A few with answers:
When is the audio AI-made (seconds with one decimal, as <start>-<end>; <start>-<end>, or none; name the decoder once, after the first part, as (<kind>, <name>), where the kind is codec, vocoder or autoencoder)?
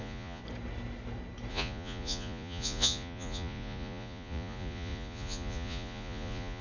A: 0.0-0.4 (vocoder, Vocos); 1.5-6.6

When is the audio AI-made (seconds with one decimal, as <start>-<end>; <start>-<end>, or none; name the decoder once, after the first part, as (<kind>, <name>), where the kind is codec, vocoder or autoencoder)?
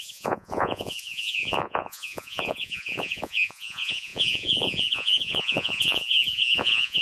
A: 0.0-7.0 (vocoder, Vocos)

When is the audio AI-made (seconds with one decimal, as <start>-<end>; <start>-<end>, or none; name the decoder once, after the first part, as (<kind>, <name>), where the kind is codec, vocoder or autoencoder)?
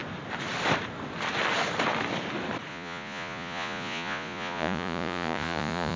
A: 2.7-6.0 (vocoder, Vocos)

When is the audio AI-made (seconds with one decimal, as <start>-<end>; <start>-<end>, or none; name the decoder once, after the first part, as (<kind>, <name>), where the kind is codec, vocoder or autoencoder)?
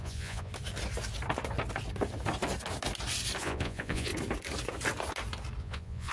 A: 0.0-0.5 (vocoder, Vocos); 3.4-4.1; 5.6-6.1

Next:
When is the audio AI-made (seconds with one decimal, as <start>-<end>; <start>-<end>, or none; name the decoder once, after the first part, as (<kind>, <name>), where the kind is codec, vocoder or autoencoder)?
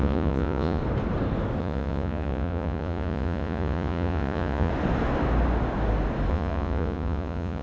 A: 0.0-0.8 (vocoder, Vocos); 1.6-4.7; 6.3-7.6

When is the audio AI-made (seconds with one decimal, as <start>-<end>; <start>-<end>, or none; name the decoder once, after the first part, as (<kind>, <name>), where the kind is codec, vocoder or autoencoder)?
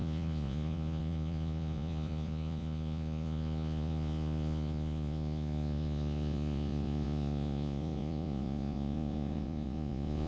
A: 0.0-10.3 (vocoder, Vocos)